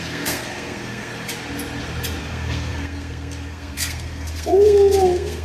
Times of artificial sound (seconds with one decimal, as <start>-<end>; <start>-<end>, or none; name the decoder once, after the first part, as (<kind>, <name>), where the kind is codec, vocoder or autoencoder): 0.0-1.1 (codec, SNAC); 2.2-5.4